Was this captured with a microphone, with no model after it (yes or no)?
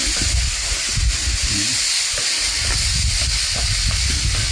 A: yes